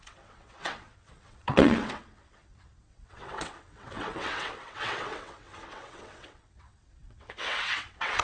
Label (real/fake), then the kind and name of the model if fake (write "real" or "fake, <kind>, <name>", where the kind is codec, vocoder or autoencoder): fake, vocoder, WaveNeXt